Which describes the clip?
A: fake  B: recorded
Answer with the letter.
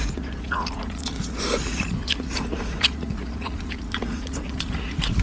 A